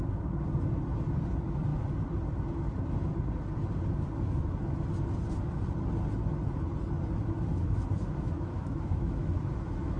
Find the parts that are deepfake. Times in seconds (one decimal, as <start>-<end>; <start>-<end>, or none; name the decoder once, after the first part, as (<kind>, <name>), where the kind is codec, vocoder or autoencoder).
7.5-10.0 (autoencoder, DAC-VAE)